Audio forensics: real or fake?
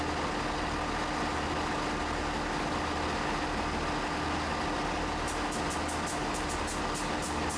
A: real